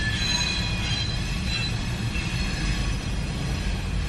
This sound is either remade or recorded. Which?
recorded